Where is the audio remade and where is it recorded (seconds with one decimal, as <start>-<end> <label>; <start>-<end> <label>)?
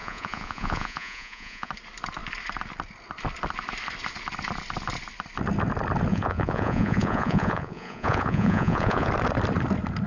0.0-1.7 remade; 1.7-6.1 recorded; 6.1-9.1 remade; 9.1-10.1 recorded